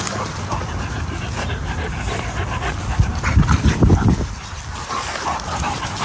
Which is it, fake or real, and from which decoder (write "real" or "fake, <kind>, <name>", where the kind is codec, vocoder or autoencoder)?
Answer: real